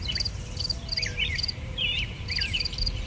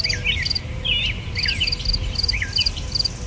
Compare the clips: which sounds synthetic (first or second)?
first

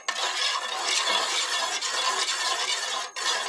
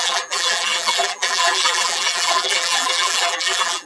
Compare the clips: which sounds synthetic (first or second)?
second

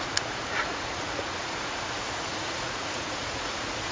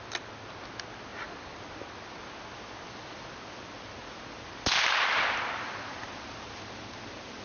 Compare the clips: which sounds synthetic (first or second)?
first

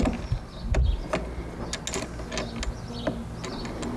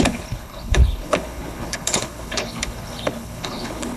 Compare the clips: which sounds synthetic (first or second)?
second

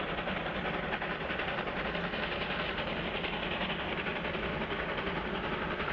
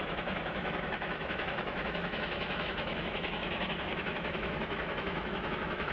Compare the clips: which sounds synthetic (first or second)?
second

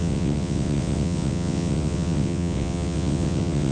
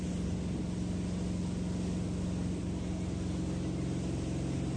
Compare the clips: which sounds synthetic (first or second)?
first